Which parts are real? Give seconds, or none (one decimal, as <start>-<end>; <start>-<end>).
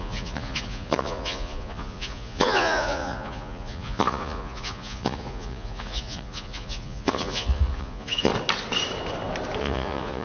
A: 8.3-9.6